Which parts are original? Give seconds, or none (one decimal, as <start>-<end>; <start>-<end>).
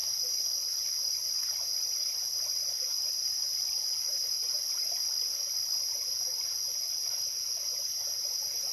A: 0.0-8.7